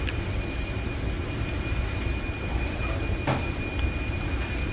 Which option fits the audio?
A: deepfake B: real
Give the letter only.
B